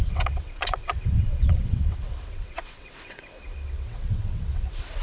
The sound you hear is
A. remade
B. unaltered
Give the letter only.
A